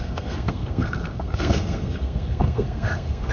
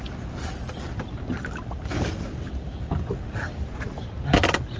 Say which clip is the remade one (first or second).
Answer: first